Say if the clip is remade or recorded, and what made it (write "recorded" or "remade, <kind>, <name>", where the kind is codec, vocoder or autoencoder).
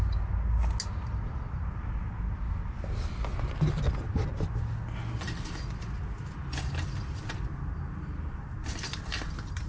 recorded